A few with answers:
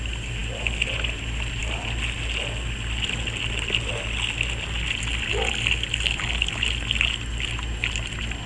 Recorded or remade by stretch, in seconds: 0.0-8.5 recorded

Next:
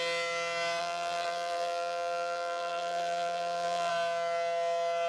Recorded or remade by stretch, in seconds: 0.0-0.8 recorded; 0.8-3.9 remade; 3.9-5.1 recorded

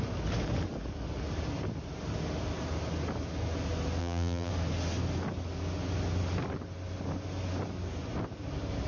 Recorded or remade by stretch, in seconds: 0.0-4.0 recorded; 4.0-4.5 remade; 4.5-8.9 recorded